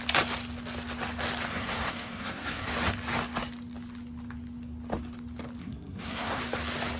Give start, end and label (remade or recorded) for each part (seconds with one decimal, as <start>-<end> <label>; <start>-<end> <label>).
0.0-1.5 recorded; 1.5-2.7 remade; 2.7-5.6 recorded; 5.6-6.4 remade; 6.4-7.0 recorded